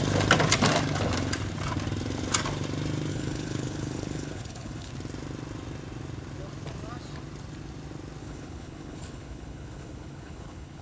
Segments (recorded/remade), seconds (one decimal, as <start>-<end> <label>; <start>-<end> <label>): 0.0-3.1 recorded; 3.1-4.9 remade; 4.9-8.2 recorded; 8.2-10.8 remade